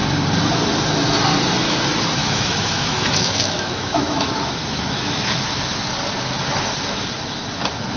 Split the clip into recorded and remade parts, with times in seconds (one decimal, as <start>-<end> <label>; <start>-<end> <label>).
0.0-2.2 recorded; 2.2-5.9 remade; 5.9-8.0 recorded